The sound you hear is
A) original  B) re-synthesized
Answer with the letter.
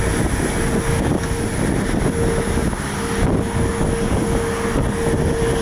A